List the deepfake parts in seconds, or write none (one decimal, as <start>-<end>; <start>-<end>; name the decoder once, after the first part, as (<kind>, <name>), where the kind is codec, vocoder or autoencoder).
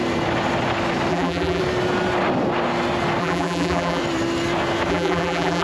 1.1-1.6 (vocoder, BigVGAN v2); 3.2-4.0; 4.9-5.6